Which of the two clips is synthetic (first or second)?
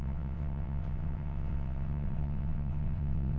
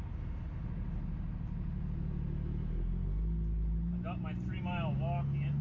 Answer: first